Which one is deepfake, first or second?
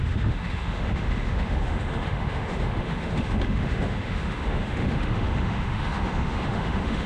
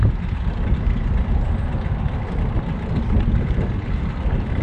first